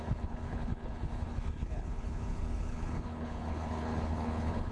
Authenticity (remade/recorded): remade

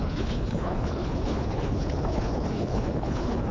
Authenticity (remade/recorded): remade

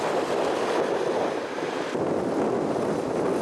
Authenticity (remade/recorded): recorded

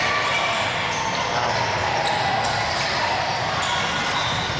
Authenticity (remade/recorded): recorded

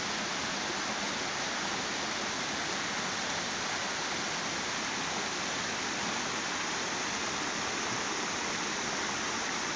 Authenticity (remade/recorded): recorded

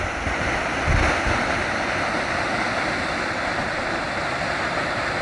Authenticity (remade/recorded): recorded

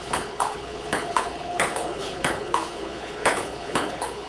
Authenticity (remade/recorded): remade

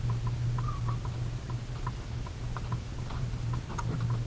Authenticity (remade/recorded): recorded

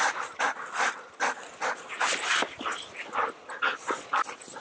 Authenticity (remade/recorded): recorded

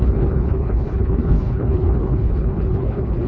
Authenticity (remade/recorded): remade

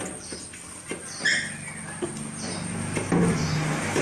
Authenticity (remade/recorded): recorded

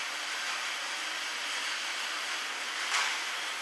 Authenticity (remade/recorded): recorded